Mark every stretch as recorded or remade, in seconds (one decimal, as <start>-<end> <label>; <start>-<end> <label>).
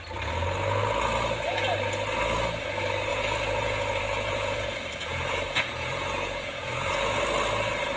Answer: 0.0-3.1 recorded; 3.1-7.2 remade; 7.2-8.0 recorded